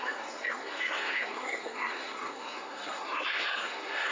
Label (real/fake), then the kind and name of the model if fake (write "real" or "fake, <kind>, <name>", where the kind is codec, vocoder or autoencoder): fake, codec, SNAC